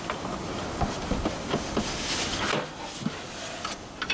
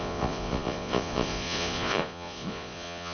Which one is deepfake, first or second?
second